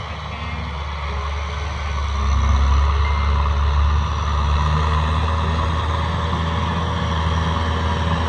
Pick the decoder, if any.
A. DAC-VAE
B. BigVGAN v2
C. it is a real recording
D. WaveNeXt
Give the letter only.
C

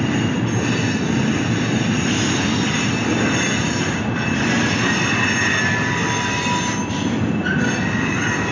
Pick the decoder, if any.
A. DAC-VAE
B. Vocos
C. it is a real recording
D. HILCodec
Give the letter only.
C